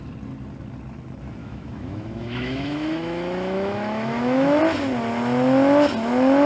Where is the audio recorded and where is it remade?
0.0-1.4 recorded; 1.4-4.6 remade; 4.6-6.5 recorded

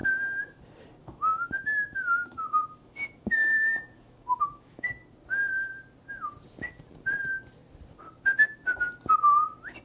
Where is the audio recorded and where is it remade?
0.0-0.6 remade; 0.6-1.0 recorded; 1.0-5.0 remade; 5.0-9.8 recorded

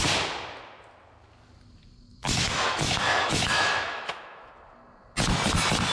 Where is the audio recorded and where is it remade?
0.0-2.1 recorded; 2.1-4.5 remade; 4.5-5.9 recorded

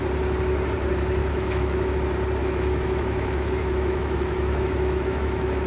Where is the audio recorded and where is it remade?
0.0-1.2 recorded; 1.2-1.9 remade; 1.9-2.4 recorded; 2.4-5.7 remade